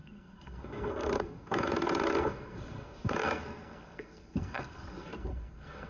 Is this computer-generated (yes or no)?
yes